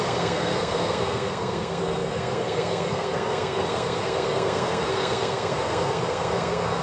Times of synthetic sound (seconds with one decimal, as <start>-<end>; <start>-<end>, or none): 0.0-6.8